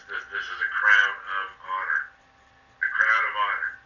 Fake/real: real